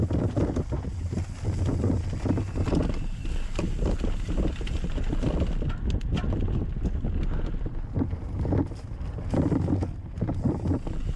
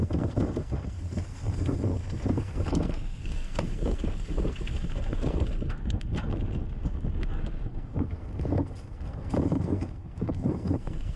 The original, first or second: first